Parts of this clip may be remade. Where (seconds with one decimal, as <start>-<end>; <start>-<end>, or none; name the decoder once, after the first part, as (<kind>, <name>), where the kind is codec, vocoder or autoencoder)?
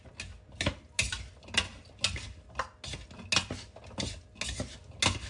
none